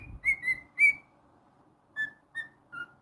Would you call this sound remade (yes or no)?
no